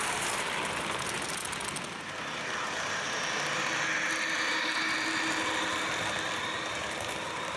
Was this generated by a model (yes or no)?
no